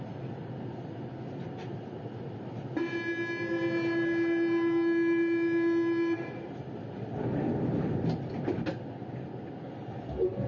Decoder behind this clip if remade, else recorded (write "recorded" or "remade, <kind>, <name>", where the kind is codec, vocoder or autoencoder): recorded